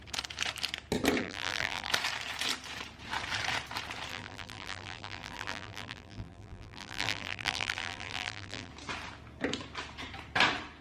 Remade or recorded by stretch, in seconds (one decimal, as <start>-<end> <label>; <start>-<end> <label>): 0.0-1.2 recorded; 1.2-1.9 remade; 1.9-4.1 recorded; 4.1-8.7 remade; 8.7-10.8 recorded